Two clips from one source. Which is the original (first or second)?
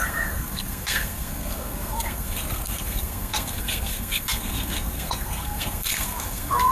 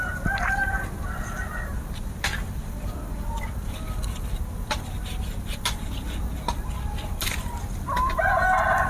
second